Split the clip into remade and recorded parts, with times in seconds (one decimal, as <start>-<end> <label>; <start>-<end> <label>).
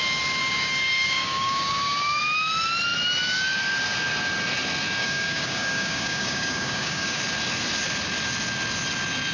0.0-0.4 recorded; 0.4-2.2 remade; 2.2-5.0 recorded; 5.0-7.2 remade; 7.2-9.3 recorded